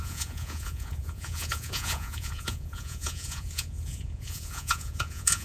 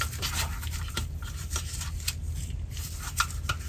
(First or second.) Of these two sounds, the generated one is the first